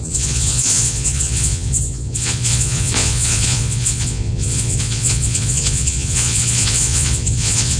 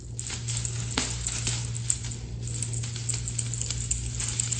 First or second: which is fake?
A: first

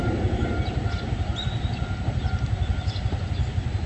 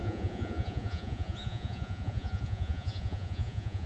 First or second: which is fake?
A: second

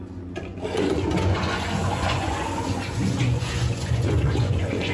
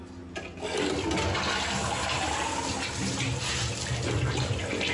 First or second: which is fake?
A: first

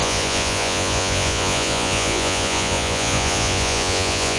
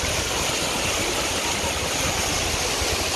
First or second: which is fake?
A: first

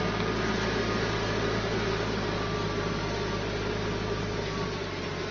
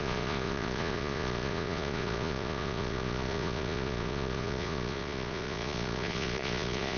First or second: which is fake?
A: second